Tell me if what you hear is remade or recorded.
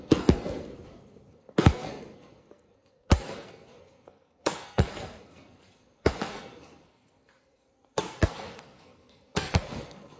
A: remade